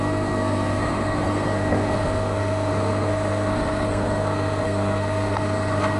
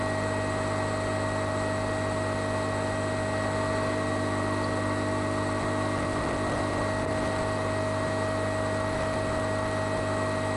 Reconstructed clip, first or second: first